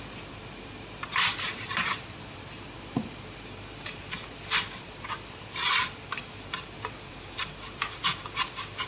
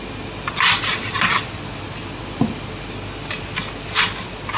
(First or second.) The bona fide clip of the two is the second